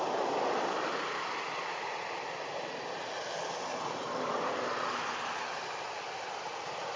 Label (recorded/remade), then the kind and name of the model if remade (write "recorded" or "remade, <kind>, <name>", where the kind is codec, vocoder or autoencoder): recorded